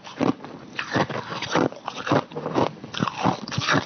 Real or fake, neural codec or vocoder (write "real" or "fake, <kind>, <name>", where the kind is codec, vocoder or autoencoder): real